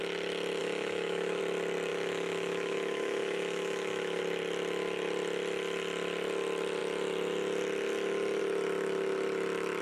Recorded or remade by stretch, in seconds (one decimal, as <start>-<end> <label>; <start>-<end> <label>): 0.0-0.6 recorded; 0.6-1.4 remade; 1.4-1.9 recorded; 1.9-4.2 remade; 4.2-9.8 recorded